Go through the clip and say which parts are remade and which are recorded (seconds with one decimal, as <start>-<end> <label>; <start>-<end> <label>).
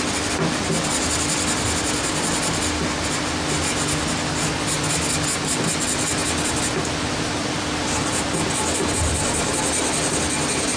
0.0-10.8 recorded